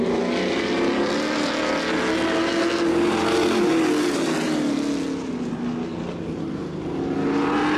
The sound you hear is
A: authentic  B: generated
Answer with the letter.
A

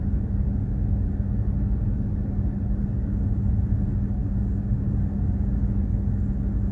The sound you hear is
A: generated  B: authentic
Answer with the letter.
B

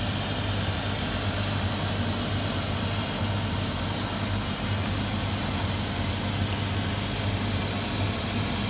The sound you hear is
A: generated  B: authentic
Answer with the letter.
B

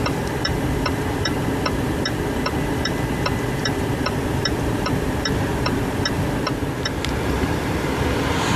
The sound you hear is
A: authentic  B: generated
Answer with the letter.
B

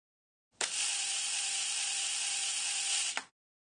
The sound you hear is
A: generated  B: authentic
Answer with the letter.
B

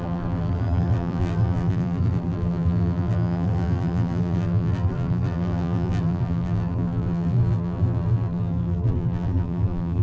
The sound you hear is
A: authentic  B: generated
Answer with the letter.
B